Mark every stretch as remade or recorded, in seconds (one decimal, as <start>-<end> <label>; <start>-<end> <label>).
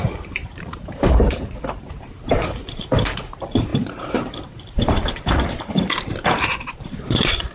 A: 0.0-7.5 remade